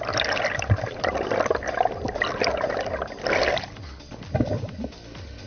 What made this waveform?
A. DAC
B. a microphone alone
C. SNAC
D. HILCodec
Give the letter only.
B